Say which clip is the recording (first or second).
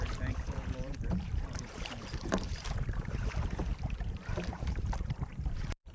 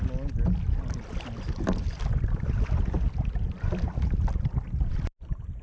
second